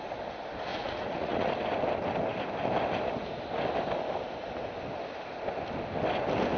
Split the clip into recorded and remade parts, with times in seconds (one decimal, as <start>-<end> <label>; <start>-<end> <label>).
0.0-0.7 recorded; 0.7-1.5 remade; 1.5-6.6 recorded